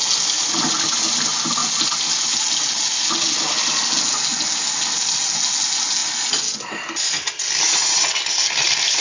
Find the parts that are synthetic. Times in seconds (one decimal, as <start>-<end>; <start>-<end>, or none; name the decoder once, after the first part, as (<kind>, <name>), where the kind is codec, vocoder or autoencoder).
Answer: none